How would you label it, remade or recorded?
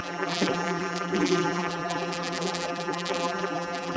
remade